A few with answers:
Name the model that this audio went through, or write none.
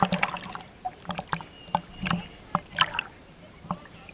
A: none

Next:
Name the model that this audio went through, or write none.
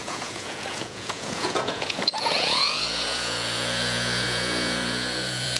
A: vocoder, Vocos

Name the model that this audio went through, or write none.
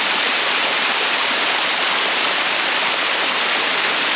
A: none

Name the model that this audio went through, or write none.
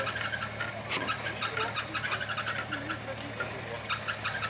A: none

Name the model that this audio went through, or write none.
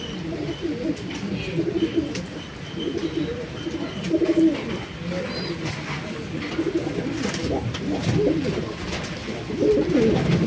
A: none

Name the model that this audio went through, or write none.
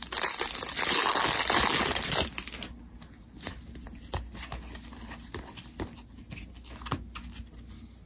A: none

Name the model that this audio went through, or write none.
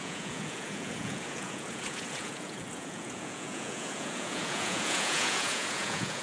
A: vocoder, Vocos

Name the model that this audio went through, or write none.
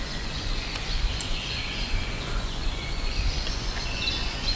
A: vocoder, Vocos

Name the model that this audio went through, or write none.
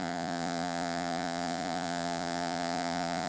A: vocoder, Vocos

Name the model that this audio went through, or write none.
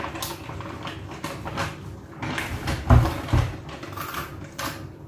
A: none